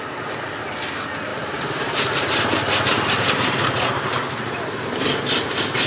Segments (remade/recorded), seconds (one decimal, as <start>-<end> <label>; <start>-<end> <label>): 0.0-1.3 recorded; 1.3-4.1 remade; 4.1-5.9 recorded